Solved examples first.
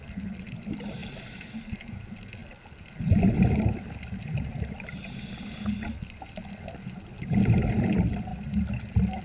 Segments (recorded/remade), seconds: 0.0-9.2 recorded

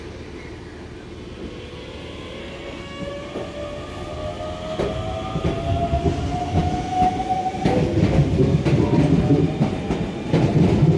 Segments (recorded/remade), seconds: 0.0-2.4 recorded; 2.4-3.1 remade; 3.1-11.0 recorded

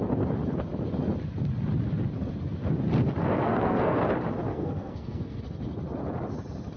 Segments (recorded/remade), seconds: 0.0-3.2 recorded; 3.2-4.0 remade; 4.0-4.5 recorded; 4.5-5.4 remade; 5.4-6.8 recorded

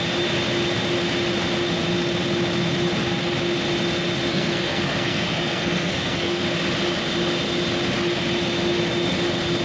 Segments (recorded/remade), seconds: 0.0-4.3 recorded; 4.3-6.4 remade; 6.4-9.6 recorded

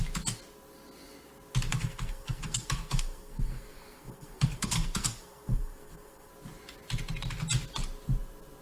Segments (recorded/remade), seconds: 0.0-1.7 recorded; 1.7-6.3 remade; 6.3-8.6 recorded

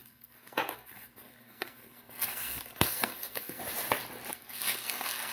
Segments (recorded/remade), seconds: 0.0-3.6 remade; 3.6-4.3 recorded; 4.3-5.3 remade